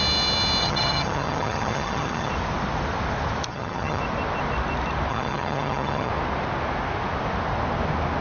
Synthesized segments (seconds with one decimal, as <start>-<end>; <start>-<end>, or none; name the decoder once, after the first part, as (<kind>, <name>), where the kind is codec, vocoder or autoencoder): 0.6-2.3 (vocoder, HiFi-GAN); 3.5-4.0; 5.1-6.1

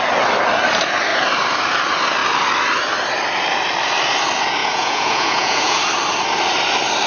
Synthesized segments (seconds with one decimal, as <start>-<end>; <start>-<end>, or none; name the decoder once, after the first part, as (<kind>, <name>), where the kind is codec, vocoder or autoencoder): 4.6-5.8 (vocoder, Vocos)

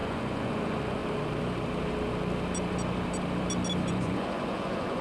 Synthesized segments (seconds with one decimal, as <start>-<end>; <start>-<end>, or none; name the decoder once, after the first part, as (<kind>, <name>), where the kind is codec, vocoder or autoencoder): 0.0-1.0 (vocoder, Vocos); 3.9-5.0